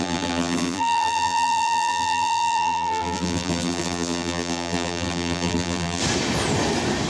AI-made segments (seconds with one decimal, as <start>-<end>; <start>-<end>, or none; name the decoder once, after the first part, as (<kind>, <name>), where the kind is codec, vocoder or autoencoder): 0.0-6.0 (vocoder, BigVGAN v2)